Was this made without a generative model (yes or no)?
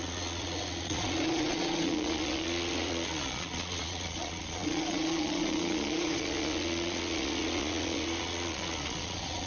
no